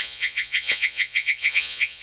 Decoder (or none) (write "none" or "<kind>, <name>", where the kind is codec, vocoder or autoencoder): vocoder, Vocos